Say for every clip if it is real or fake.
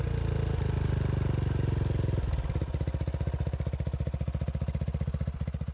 real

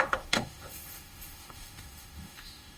fake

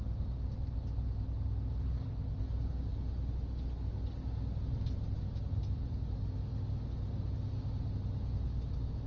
real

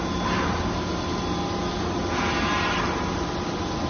real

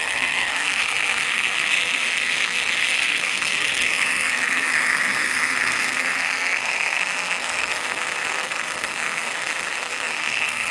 fake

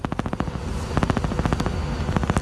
real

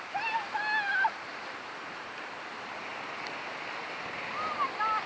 real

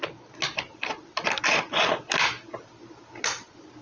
real